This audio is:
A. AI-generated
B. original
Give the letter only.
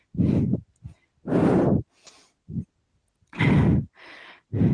B